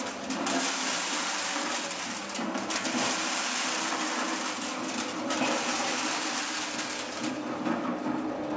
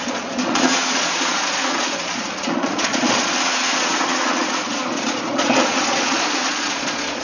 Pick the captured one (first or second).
first